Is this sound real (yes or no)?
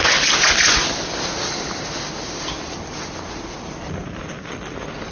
yes